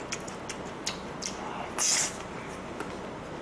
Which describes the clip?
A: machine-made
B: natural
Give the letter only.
B